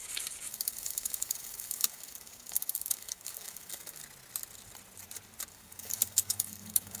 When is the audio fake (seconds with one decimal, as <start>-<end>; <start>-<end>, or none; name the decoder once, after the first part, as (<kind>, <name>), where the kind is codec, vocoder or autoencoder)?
0.0-4.0 (codec, DAC); 5.5-7.0